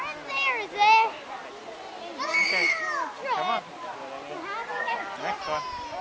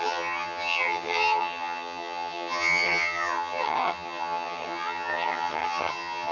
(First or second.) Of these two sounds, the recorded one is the first